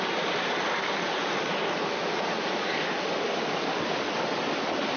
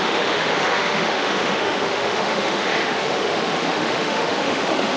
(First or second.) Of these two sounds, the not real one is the second